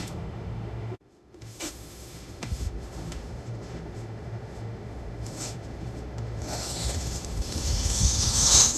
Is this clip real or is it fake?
fake